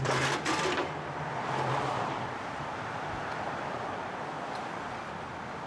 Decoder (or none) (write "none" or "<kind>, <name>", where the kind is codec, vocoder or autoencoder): vocoder, BigVGAN v2